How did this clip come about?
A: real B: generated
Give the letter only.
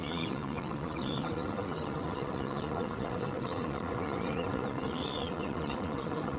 B